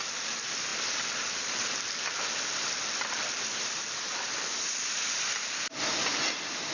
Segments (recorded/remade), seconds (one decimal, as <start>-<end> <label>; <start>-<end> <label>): 0.0-6.7 recorded